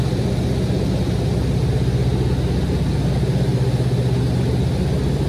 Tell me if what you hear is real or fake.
real